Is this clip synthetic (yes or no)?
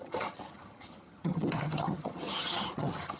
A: yes